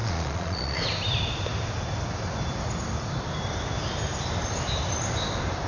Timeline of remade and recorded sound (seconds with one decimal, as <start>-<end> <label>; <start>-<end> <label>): 0.0-0.8 remade; 0.8-5.7 recorded